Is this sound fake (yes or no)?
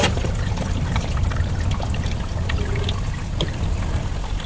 no